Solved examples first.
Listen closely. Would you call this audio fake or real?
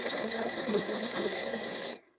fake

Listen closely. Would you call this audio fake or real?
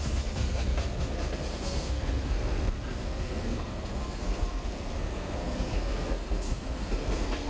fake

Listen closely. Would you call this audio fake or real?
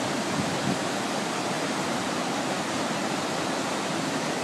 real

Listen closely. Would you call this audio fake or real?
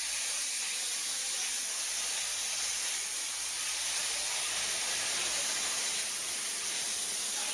real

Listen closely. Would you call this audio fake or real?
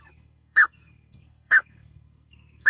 fake